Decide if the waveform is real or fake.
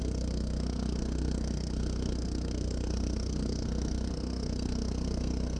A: fake